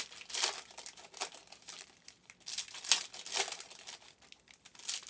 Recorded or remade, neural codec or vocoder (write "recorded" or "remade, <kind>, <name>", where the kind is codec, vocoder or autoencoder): recorded